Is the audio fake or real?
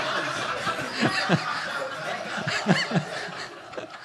real